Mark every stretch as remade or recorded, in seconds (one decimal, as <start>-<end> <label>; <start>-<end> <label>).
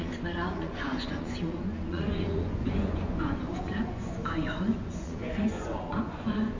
0.0-6.6 remade